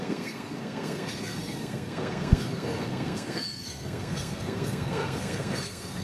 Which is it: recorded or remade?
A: remade